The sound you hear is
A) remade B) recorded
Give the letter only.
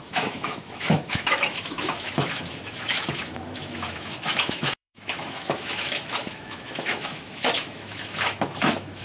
A